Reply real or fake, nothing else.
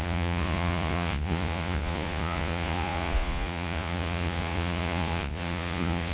fake